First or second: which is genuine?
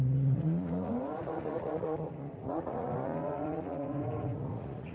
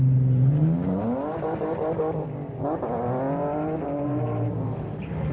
second